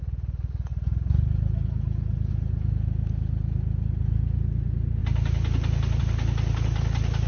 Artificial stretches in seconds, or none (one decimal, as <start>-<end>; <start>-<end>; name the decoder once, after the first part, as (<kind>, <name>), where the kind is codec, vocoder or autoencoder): none